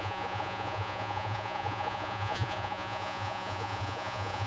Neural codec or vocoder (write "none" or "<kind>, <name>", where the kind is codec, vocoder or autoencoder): vocoder, Vocos